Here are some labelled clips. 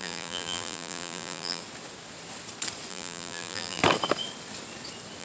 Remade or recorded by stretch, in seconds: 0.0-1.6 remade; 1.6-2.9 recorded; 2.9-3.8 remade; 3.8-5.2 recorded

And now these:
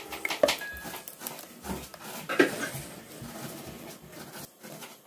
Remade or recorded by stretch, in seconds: 0.0-5.1 recorded

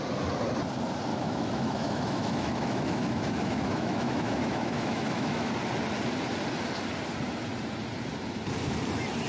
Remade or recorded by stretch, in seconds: 0.0-1.1 recorded; 1.1-5.5 remade; 5.5-9.3 recorded

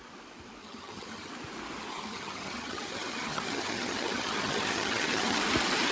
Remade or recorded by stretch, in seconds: 0.0-0.6 recorded; 0.6-1.3 remade; 1.3-1.9 recorded; 1.9-5.4 remade; 5.4-5.9 recorded

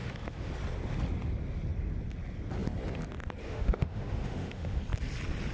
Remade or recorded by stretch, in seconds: 0.0-0.5 remade; 0.5-3.4 recorded; 3.4-4.8 remade; 4.8-5.5 recorded